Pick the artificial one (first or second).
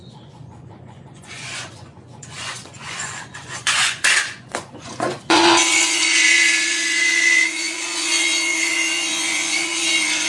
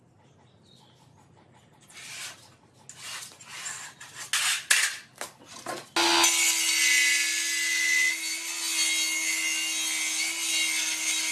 first